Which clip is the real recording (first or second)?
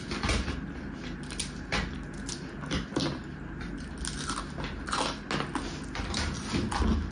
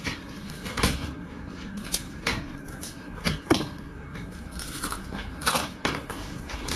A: first